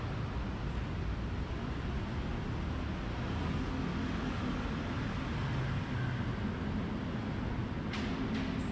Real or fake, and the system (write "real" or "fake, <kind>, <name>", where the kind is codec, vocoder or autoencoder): real